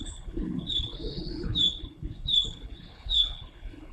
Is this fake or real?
fake